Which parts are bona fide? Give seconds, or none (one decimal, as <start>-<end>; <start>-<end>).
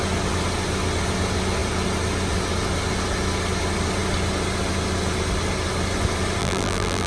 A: 0.0-6.4